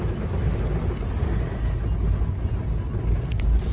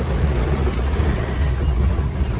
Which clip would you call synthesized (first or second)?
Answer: second